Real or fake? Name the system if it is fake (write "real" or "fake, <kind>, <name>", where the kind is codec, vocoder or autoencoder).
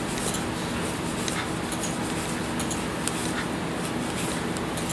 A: real